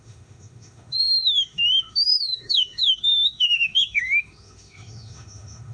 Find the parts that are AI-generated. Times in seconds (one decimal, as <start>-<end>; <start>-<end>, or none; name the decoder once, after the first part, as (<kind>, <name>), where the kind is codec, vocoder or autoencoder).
0.0-5.7 (autoencoder, DAC-VAE)